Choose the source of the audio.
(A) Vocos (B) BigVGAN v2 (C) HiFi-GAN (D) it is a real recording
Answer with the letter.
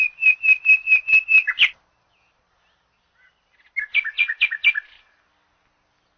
D